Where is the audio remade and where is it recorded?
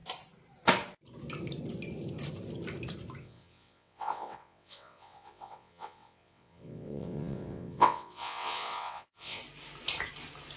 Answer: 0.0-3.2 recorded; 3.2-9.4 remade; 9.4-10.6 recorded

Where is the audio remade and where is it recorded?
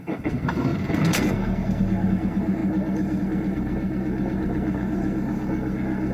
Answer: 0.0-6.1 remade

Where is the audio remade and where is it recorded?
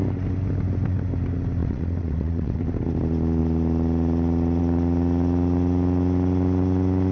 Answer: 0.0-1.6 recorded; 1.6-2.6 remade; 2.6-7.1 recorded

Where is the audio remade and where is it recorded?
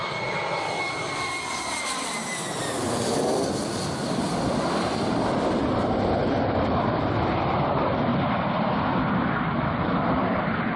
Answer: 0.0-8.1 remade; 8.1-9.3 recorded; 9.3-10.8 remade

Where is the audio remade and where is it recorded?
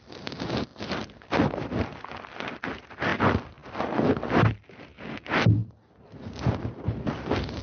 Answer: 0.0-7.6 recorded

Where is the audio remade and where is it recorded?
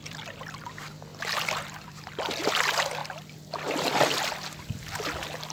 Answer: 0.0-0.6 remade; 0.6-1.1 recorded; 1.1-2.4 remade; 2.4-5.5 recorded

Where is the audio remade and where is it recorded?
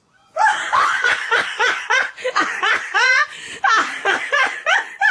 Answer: 0.0-3.2 remade; 3.2-4.3 recorded; 4.3-5.1 remade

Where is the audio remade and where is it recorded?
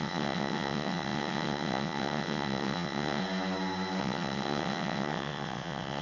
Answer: 0.0-3.2 remade; 3.2-4.0 recorded; 4.0-6.0 remade